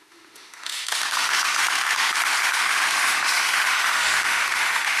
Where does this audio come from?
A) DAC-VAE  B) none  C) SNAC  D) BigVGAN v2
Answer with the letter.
A